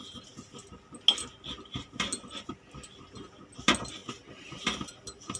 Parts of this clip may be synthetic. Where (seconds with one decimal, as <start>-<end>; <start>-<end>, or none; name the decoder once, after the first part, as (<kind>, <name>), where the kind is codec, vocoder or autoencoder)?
4.0-4.6 (vocoder, BigVGAN v2)